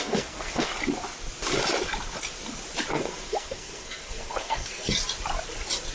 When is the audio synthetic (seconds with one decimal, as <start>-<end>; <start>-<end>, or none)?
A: 0.0-0.7; 2.9-4.9